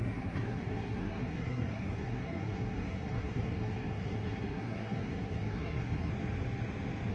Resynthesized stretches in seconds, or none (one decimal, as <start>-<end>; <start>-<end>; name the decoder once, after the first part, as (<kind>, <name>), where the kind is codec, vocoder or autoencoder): 0.0-6.1 (codec, SNAC)